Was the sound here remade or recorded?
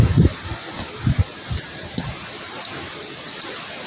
recorded